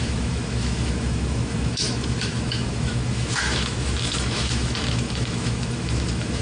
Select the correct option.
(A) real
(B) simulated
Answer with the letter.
B